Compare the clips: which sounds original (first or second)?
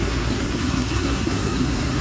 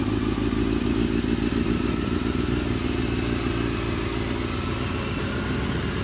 second